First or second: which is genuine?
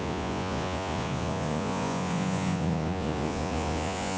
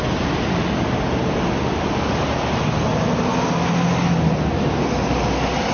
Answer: second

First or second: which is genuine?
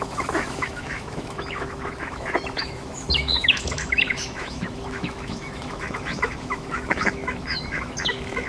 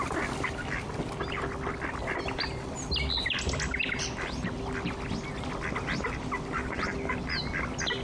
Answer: second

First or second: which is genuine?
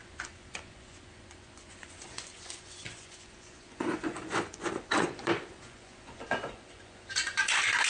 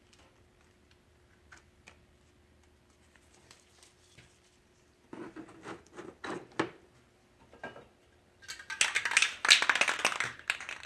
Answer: second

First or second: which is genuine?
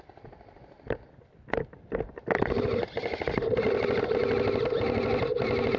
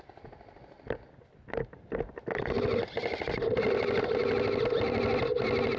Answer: second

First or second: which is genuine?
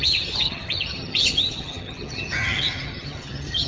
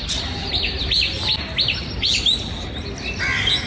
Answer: second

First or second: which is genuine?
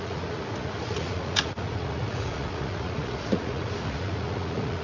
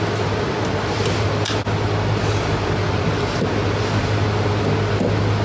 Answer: second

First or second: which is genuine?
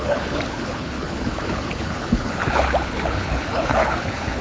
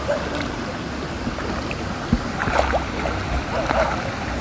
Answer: second